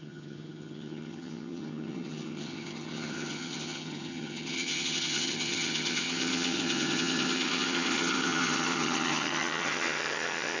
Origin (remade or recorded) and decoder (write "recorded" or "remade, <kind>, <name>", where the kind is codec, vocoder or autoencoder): remade, vocoder, HiFi-GAN